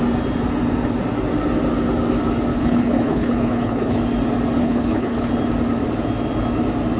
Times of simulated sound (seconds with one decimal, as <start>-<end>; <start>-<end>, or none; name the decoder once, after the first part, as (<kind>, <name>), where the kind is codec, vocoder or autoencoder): 2.5-4.0 (codec, HILCodec); 4.6-5.3